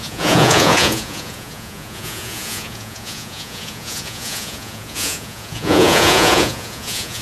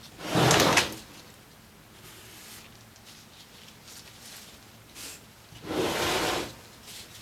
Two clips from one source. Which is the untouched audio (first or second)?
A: second